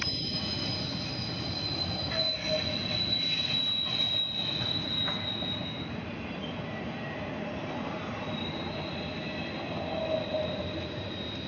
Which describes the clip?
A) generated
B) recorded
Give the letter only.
B